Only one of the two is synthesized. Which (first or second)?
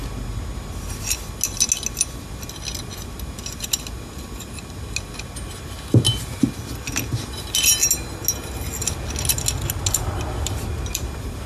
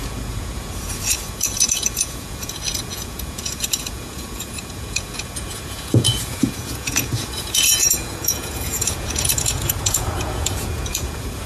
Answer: second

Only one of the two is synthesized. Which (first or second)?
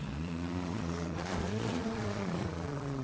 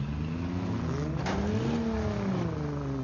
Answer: first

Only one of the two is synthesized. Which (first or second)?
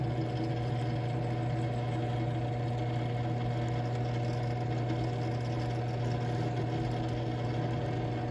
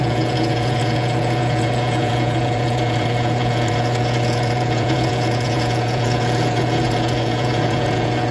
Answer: second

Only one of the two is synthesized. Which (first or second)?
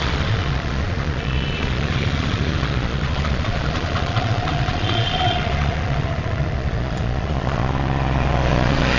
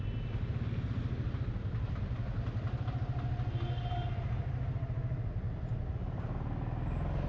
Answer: first